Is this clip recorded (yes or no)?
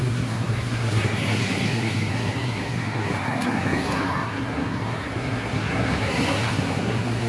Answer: no